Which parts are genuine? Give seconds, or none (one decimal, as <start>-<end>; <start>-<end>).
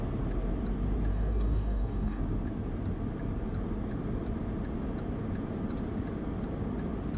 0.0-1.1; 2.2-7.2